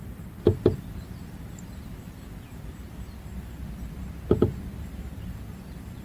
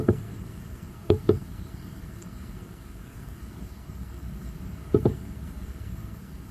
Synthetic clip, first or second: second